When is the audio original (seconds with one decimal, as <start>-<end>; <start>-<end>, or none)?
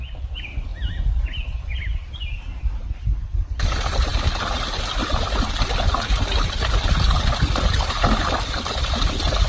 0.0-9.5